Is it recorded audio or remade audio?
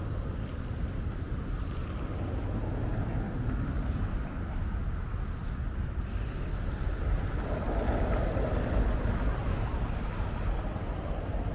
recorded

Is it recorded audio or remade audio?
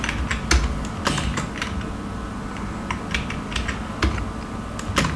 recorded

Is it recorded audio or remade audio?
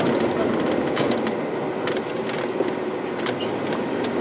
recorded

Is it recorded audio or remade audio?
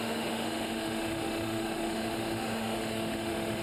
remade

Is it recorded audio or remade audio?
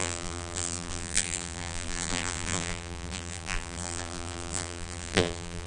remade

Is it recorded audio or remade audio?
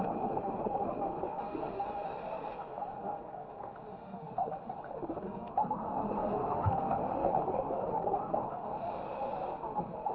remade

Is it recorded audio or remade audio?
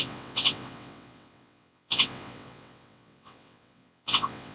remade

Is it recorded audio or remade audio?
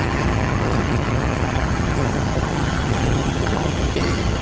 remade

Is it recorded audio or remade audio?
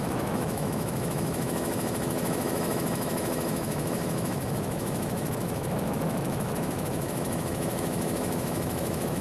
remade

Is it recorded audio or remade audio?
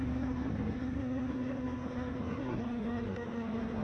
remade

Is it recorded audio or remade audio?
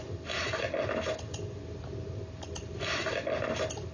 recorded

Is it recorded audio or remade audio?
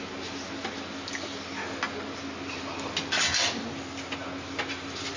recorded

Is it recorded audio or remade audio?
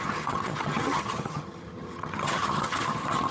remade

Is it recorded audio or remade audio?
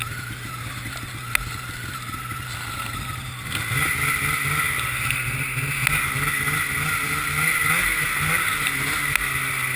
recorded